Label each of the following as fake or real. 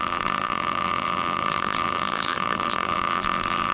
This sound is fake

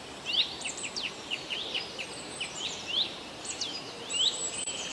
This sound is fake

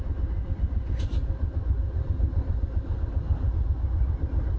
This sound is real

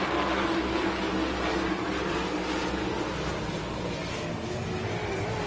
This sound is real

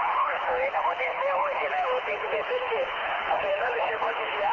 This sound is fake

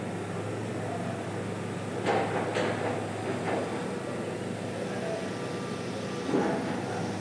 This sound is real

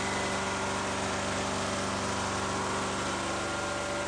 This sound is real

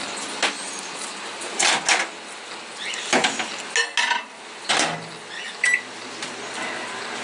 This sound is real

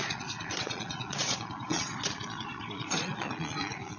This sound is fake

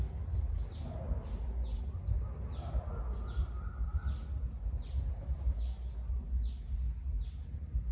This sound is real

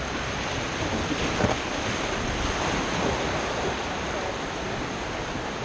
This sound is real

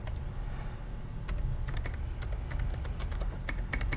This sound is real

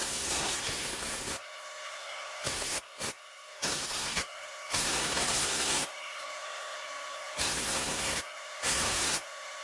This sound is fake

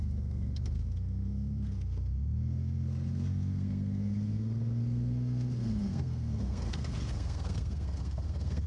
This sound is fake